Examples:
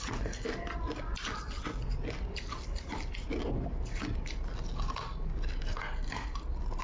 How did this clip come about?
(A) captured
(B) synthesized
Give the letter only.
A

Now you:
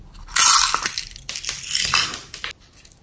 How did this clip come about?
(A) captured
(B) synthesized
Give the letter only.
A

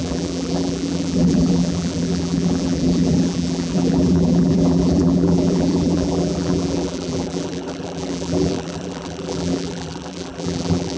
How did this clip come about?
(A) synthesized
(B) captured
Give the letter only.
A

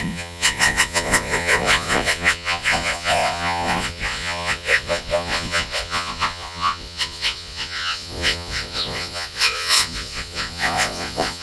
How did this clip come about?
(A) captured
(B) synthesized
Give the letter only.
B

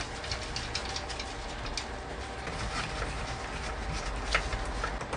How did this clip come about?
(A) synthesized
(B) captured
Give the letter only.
B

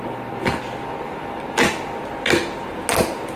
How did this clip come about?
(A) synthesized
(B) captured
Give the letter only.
B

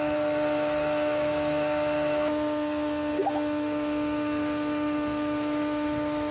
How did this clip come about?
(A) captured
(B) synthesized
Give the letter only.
B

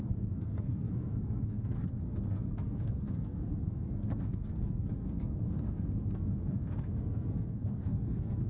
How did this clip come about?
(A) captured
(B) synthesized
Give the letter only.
B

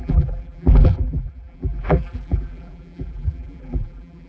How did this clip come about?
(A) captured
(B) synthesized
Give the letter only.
B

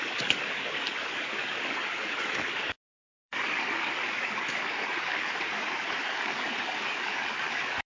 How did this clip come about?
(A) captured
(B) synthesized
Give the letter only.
B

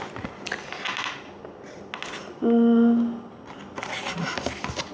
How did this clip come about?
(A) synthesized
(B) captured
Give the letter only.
B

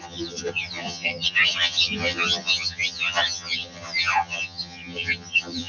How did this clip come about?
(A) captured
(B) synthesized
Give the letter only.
B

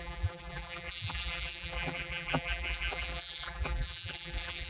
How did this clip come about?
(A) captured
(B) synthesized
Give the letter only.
B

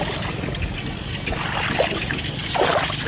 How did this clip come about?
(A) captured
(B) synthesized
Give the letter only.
A